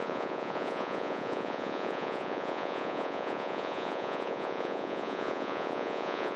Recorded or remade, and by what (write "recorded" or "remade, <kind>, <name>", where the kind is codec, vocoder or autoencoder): remade, vocoder, Vocos